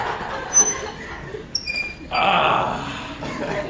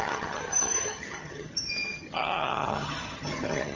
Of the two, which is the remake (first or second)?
second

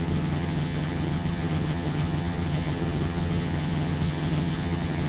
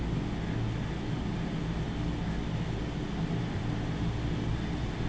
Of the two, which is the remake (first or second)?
first